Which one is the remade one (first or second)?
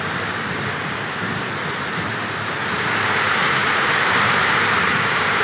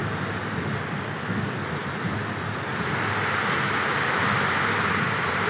first